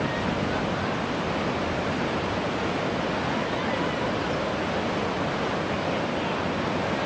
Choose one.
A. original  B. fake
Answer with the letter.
A